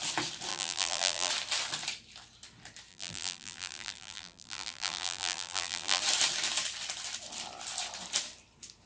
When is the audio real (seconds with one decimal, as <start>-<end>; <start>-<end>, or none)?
0.0-0.5; 1.3-2.9; 6.0-8.9